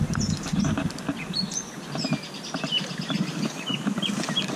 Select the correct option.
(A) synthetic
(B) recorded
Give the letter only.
B